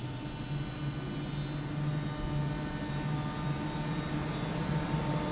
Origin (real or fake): real